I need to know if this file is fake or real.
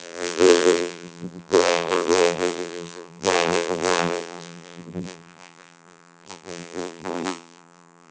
fake